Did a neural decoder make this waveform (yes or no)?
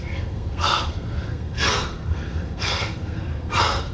yes